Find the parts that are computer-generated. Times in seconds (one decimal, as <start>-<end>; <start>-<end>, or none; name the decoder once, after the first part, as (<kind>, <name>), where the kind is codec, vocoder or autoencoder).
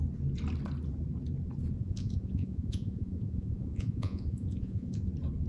1.8-5.1 (vocoder, Vocos)